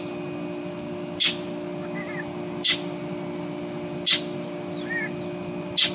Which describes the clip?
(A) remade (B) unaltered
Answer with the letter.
B